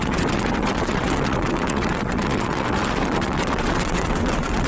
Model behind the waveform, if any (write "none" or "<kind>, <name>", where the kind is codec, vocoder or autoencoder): vocoder, WaveNeXt